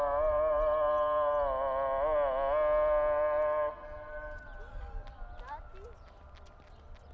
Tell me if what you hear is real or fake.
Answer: real